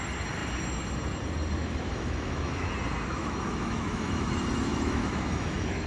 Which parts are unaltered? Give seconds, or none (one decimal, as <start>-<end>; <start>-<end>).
0.0-1.6; 2.7-3.2; 4.3-4.7